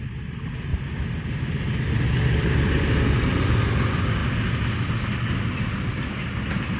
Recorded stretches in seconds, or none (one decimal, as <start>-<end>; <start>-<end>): 0.0-0.7; 2.0-6.8